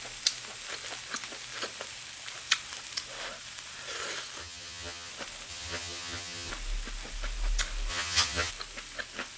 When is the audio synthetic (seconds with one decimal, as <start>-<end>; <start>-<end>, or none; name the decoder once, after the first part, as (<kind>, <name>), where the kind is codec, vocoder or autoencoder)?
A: 4.4-5.1 (vocoder, HiFi-GAN); 5.5-6.5; 7.9-8.5